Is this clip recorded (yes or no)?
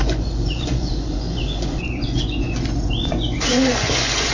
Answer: no